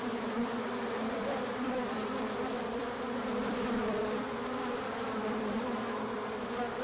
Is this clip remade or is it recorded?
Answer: remade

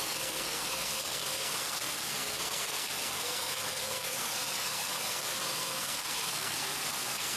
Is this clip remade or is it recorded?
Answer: remade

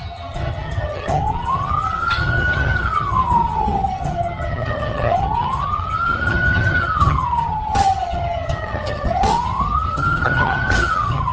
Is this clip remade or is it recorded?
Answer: remade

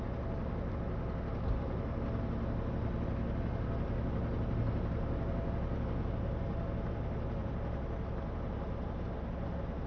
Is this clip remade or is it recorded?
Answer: recorded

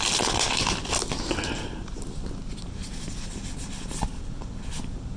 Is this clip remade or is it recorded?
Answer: recorded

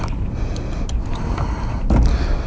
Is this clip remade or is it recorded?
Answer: recorded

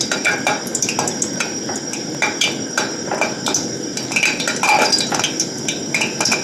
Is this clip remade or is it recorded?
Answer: remade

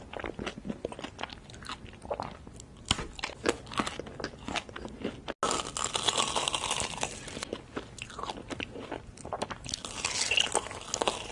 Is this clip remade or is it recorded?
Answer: recorded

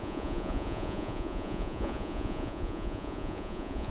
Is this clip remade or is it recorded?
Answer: remade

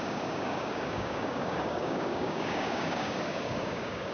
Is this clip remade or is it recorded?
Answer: remade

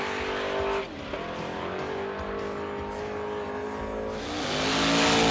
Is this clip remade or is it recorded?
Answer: recorded